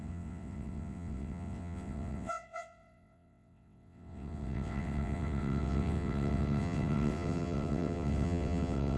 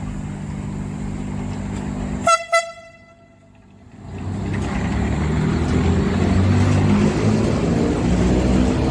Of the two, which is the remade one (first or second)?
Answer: first